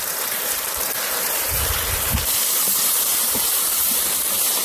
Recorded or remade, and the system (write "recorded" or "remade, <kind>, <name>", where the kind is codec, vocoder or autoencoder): remade, vocoder, BigVGAN v2